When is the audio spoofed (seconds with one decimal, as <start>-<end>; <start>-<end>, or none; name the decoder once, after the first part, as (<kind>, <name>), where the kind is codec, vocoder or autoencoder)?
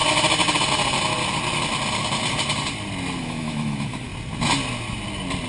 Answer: 3.2-4.1 (autoencoder, DAC-VAE)